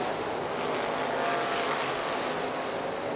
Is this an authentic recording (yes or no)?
yes